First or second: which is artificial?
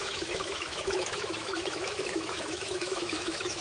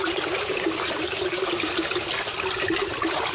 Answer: first